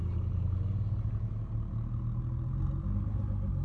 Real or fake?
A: real